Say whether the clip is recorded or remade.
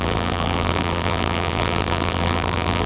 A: remade